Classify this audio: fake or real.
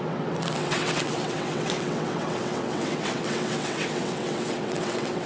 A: fake